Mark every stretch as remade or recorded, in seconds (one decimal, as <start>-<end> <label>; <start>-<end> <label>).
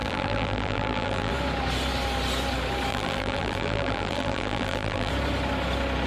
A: 0.0-1.3 remade; 1.3-2.9 recorded; 2.9-5.1 remade; 5.1-6.1 recorded